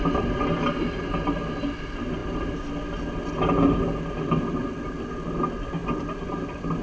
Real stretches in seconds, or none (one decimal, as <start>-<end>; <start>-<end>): 0.0-6.8

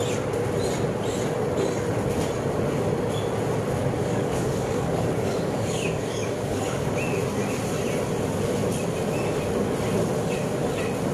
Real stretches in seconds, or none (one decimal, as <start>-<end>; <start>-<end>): 0.0-4.0; 6.9-11.1